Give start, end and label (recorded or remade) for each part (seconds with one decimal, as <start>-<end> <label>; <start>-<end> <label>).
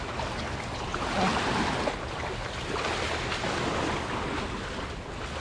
0.0-5.4 recorded